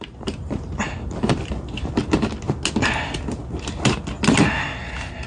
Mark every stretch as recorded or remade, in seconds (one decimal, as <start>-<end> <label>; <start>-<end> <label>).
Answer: 0.0-1.5 remade; 1.5-5.3 recorded